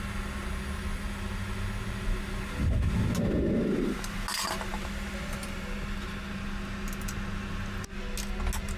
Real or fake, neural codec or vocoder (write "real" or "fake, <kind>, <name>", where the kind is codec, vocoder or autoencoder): real